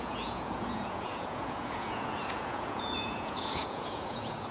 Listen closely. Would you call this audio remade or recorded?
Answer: remade